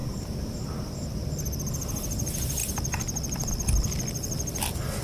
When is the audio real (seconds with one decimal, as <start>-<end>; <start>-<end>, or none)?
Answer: 1.3-5.0